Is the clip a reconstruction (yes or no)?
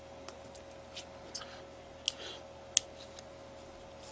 no